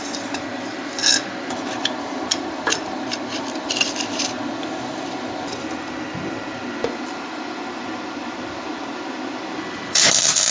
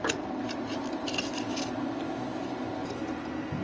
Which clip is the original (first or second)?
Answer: second